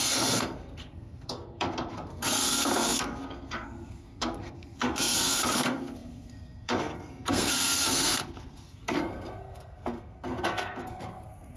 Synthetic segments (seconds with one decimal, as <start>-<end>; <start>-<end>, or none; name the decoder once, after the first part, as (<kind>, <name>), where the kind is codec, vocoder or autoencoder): 0.0-11.6 (codec, SNAC)